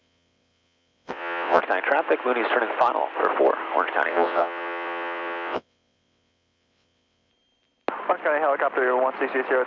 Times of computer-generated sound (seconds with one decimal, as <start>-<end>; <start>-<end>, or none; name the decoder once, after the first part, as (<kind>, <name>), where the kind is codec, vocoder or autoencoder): 0.0-1.6 (vocoder, WaveNeXt); 4.1-7.3